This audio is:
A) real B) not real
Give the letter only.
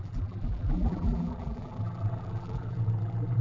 B